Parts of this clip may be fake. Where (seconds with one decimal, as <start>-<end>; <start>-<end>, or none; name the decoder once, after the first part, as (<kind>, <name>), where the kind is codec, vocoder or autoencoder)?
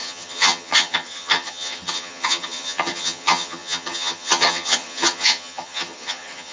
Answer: 0.0-6.5 (vocoder, HiFi-GAN)